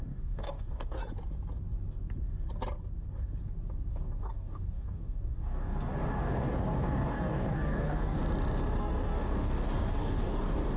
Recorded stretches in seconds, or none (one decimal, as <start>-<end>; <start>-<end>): 1.0-3.9; 8.2-8.8